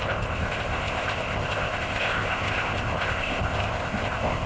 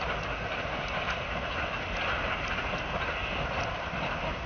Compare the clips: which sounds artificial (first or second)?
first